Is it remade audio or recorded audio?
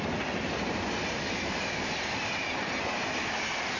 recorded